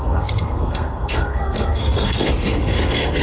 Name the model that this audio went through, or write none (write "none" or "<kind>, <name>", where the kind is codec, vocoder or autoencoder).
codec, SNAC